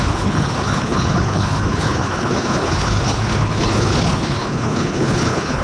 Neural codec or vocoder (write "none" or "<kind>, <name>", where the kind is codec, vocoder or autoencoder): codec, HILCodec